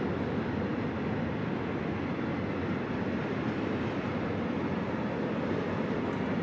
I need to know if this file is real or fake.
real